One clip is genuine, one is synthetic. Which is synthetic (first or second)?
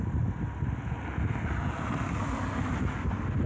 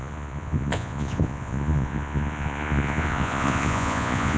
second